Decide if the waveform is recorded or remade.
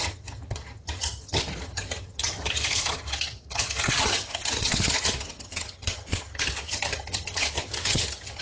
remade